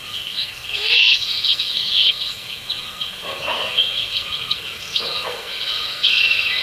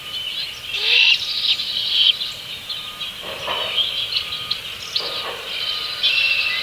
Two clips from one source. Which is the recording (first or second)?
second